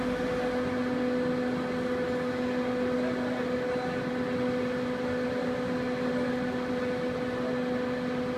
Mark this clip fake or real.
real